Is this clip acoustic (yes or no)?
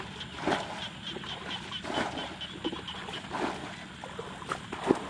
yes